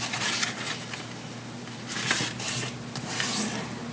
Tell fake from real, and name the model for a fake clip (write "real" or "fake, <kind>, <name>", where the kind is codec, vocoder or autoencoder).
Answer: real